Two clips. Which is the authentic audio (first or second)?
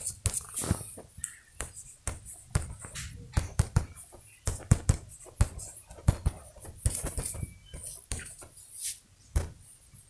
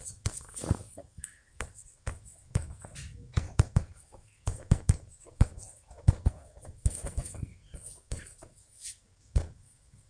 first